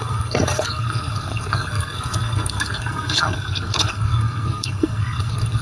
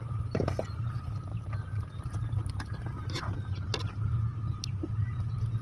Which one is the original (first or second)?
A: second